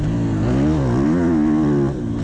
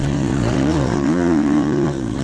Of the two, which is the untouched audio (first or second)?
first